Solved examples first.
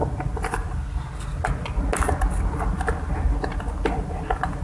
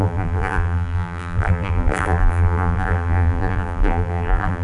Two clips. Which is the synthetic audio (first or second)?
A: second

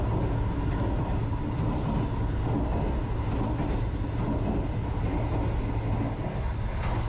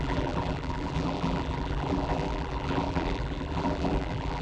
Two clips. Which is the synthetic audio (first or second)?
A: second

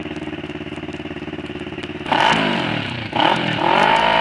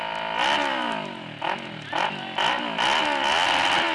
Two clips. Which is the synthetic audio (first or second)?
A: first